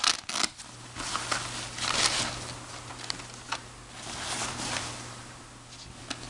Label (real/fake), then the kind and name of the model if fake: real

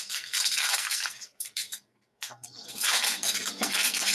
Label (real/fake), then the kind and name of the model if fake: fake, codec, SNAC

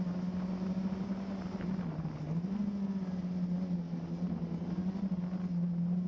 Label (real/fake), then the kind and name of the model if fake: real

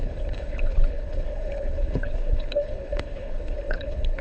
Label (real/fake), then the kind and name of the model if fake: fake, codec, HILCodec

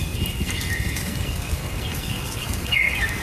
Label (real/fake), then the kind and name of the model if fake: fake, codec, SNAC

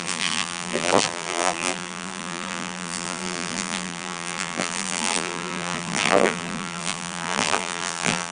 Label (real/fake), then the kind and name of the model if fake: fake, vocoder, BigVGAN v2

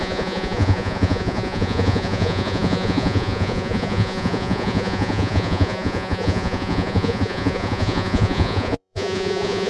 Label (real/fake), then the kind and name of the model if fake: fake, vocoder, Vocos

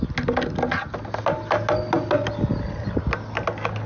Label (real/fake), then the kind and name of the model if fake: real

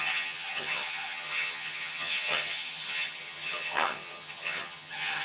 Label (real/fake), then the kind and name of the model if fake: fake, vocoder, HiFi-GAN